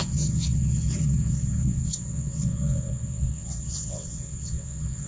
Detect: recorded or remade remade